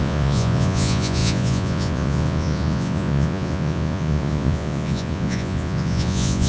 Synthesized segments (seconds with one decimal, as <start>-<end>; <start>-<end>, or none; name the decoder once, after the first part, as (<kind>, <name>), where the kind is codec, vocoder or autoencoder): 0.0-6.5 (vocoder, Vocos)